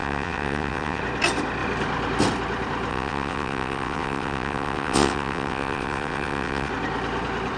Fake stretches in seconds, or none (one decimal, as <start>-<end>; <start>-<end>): 0.0-1.0; 2.9-6.7